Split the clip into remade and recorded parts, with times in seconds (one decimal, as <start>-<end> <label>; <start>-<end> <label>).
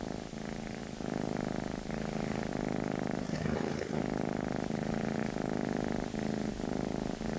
0.0-3.2 recorded; 3.2-4.0 remade; 4.0-7.4 recorded